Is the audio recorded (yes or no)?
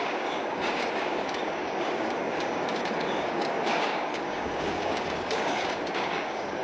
no